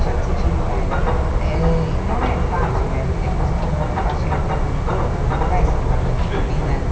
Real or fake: real